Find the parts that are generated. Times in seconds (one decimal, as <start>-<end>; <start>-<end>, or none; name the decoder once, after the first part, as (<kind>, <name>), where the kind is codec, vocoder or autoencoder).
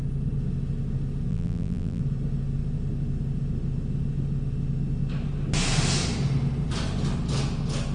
1.3-2.0 (vocoder, BigVGAN v2)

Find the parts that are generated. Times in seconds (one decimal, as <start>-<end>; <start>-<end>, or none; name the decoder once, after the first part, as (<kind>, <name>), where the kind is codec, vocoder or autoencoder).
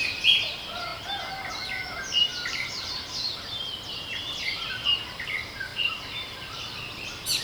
2.3-2.9 (vocoder, BigVGAN v2); 5.7-6.6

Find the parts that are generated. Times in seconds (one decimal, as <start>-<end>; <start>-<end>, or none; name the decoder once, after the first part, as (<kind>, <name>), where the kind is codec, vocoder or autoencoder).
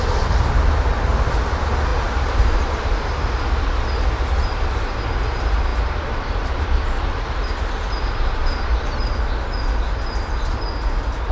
1.9-3.4 (vocoder, BigVGAN v2); 5.7-7.7; 8.4-9.0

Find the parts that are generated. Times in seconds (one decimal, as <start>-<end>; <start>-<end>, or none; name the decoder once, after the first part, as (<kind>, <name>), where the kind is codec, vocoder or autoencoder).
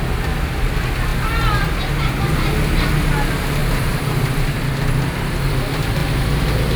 3.6-4.6 (vocoder, BigVGAN v2)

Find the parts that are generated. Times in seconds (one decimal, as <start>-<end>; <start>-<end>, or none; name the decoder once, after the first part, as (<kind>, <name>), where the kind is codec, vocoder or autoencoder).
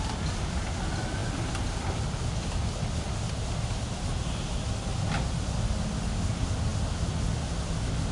none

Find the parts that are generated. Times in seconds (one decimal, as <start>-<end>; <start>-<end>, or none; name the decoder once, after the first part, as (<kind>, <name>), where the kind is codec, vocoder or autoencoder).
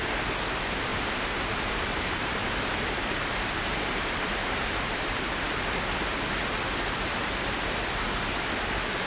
0.9-6.0 (vocoder, BigVGAN v2)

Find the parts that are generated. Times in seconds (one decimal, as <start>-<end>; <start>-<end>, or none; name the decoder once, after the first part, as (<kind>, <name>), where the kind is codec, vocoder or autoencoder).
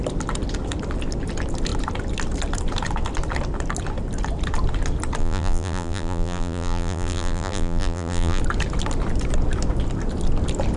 5.2-8.4 (vocoder, BigVGAN v2)